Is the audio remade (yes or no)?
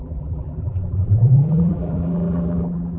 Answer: yes